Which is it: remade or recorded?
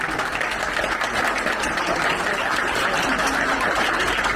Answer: recorded